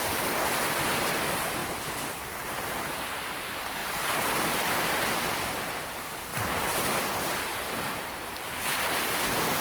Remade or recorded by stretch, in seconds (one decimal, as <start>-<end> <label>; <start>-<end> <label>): 0.0-1.6 recorded; 1.6-2.5 remade; 2.5-3.8 recorded; 3.8-4.3 remade; 4.3-7.5 recorded; 7.5-9.0 remade; 9.0-9.6 recorded